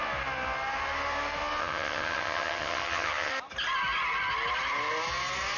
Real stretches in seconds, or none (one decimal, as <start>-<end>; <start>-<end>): 0.0-1.6; 3.3-5.6